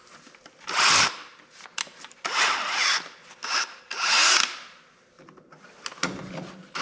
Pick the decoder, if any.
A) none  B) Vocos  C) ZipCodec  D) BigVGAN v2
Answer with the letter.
A